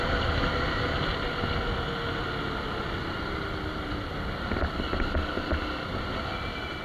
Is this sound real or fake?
real